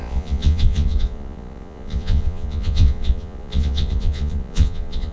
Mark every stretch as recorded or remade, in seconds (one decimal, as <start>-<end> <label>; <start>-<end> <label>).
0.0-5.1 remade